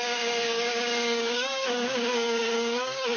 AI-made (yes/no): yes